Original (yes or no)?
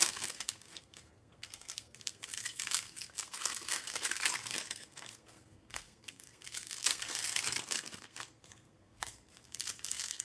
no